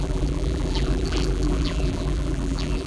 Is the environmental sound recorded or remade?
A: remade